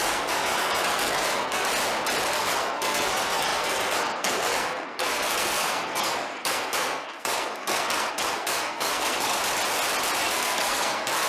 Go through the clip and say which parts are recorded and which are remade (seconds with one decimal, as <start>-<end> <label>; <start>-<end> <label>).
0.0-1.7 remade; 1.7-2.3 recorded; 2.3-9.4 remade; 9.4-10.2 recorded; 10.2-11.3 remade